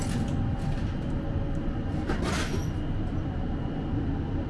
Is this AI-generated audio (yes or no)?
no